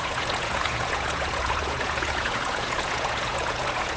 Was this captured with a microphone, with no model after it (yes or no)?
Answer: no